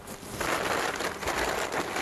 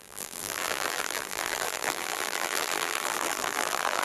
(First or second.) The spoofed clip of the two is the second